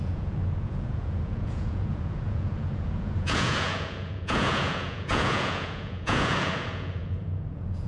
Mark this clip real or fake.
fake